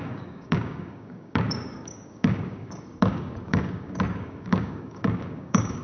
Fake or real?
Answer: fake